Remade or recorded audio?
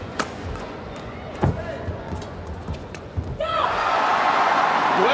remade